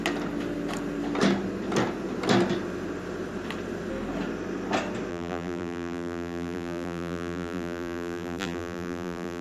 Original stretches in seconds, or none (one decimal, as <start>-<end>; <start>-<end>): 0.0-5.1